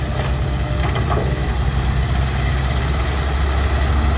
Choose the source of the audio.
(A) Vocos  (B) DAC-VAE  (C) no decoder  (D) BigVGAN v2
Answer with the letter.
C